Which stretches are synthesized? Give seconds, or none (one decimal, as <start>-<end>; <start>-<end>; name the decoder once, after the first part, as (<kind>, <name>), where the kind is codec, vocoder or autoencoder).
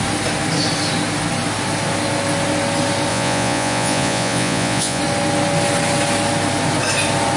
3.1-5.0 (vocoder, Vocos)